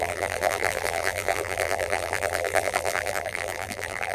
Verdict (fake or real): fake